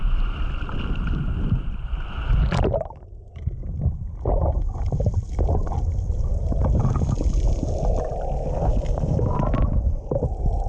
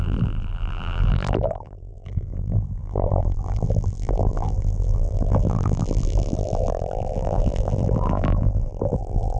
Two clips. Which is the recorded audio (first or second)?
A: first